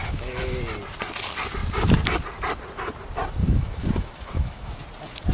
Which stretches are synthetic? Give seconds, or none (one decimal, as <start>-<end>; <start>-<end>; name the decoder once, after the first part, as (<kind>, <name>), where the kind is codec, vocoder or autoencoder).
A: 0.0-0.6 (autoencoder, DAC-VAE); 3.4-4.8